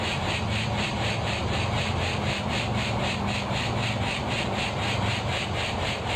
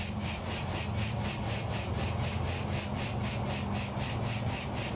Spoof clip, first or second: first